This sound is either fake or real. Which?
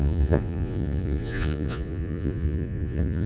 fake